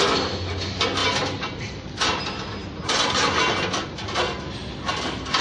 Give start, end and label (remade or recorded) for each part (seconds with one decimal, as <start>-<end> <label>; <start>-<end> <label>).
0.0-1.0 recorded; 1.0-2.2 remade; 2.2-5.4 recorded